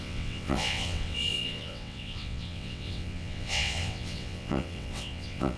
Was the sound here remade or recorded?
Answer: remade